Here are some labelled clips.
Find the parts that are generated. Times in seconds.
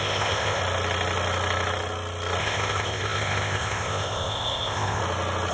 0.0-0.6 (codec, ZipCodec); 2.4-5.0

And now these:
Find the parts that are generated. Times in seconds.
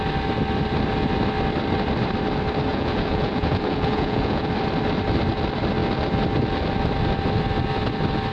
2.7-4.5 (vocoder, Vocos)